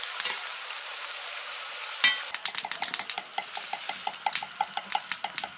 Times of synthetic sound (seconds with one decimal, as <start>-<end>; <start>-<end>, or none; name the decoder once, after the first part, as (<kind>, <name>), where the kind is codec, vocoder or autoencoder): none